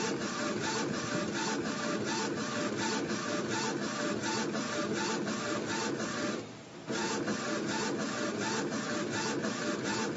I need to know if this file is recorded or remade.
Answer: recorded